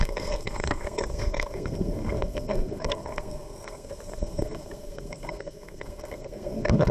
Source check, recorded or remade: remade